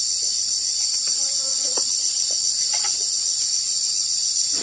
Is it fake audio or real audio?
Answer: real